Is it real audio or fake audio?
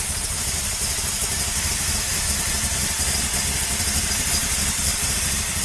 fake